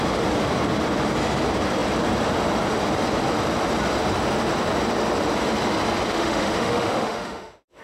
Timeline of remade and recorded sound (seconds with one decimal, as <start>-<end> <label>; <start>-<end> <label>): 0.0-6.1 recorded; 6.1-7.8 remade